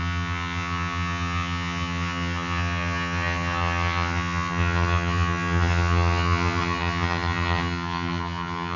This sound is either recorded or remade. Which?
remade